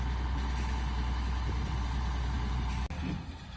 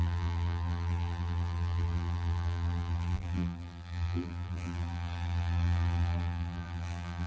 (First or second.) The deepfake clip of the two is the second